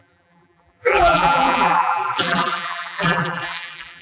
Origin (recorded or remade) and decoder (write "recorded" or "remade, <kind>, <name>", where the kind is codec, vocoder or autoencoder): remade, vocoder, BigVGAN v2